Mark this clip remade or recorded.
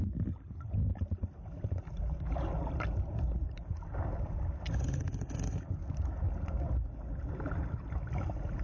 recorded